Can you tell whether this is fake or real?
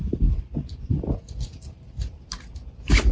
real